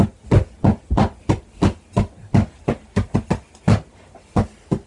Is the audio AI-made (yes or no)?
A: no